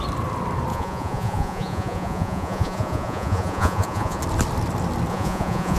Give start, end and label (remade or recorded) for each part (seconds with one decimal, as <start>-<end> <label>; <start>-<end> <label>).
0.0-0.7 recorded; 0.7-4.2 remade; 4.2-5.1 recorded; 5.1-5.8 remade